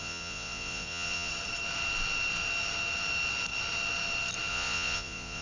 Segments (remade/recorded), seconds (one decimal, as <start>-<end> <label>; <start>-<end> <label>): 0.0-1.3 remade; 1.3-4.5 recorded; 4.5-5.4 remade